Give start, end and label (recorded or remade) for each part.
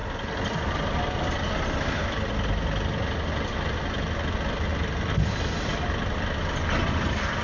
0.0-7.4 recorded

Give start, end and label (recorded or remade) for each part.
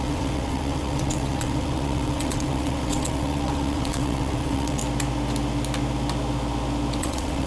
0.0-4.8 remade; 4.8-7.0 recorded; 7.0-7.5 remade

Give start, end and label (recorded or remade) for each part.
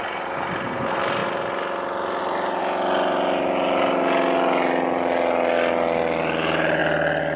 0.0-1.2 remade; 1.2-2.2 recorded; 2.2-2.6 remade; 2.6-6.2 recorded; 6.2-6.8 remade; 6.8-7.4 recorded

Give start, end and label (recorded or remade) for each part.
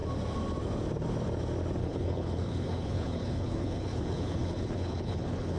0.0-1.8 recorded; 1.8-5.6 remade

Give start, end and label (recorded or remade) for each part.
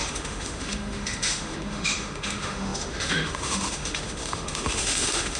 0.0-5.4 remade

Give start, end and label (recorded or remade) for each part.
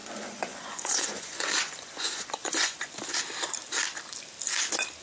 0.0-2.9 remade; 2.9-5.0 recorded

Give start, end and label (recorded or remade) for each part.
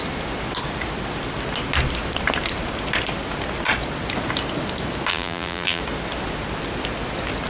0.0-5.1 recorded; 5.1-5.8 remade; 5.8-7.5 recorded